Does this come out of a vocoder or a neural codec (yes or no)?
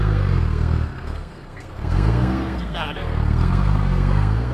yes